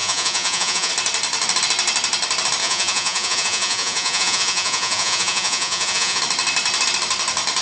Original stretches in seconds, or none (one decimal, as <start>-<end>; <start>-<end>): 0.9-2.6; 6.2-7.6